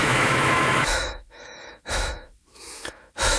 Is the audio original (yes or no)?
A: no